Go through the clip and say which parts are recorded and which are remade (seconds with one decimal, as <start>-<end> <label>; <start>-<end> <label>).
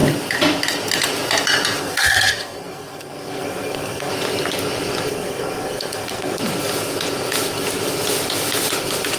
0.0-1.8 recorded; 1.8-4.1 remade; 4.1-5.1 recorded; 5.1-6.4 remade; 6.4-9.2 recorded